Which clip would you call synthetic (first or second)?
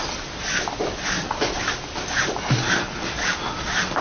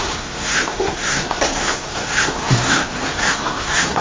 second